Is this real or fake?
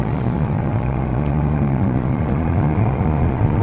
fake